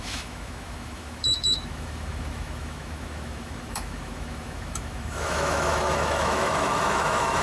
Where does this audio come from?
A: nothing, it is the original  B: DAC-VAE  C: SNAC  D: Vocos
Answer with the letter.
B